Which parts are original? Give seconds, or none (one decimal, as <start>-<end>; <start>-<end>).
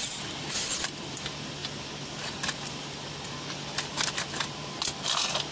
0.0-5.5